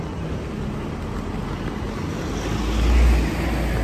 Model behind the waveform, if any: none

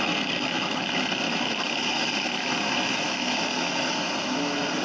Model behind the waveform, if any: autoencoder, DAC-VAE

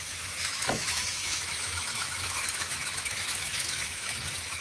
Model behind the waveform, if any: autoencoder, DAC-VAE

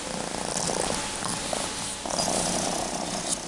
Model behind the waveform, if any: none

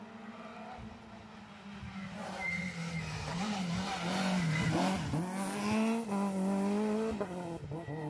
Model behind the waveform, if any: none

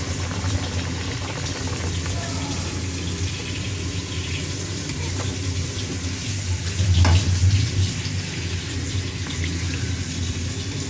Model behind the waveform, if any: none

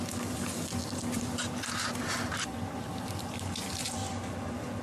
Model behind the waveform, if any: none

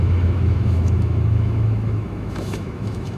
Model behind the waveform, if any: autoencoder, DAC-VAE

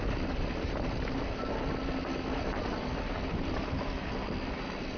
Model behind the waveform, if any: none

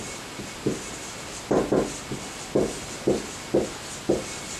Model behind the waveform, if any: none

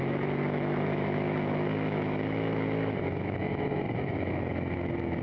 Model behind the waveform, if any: autoencoder, DAC-VAE